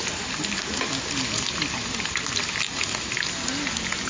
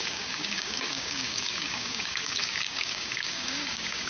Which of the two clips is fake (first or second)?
second